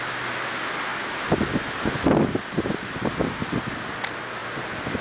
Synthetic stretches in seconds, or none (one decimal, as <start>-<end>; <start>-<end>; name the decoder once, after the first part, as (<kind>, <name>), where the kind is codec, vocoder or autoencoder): none